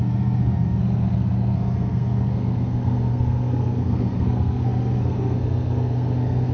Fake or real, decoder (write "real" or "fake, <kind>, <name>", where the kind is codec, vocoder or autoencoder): fake, codec, SNAC